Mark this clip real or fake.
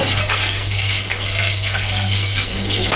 fake